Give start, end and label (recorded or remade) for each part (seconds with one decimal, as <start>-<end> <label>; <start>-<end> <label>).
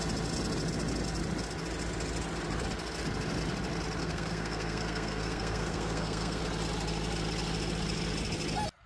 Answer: 0.0-4.0 recorded; 4.0-6.4 remade; 6.4-8.9 recorded